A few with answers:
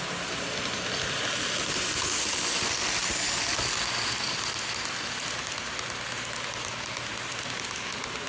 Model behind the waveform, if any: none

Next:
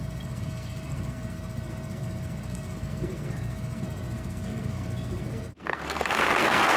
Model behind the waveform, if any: codec, SNAC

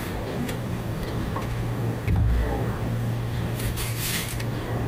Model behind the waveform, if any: codec, DAC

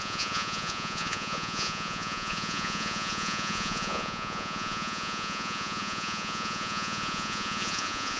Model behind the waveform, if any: vocoder, Vocos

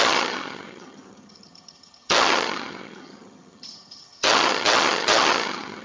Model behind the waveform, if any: vocoder, HiFi-GAN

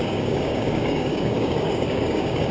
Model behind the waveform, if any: codec, DAC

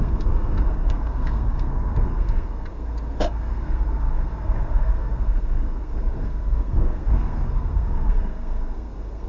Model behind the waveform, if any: codec, SNAC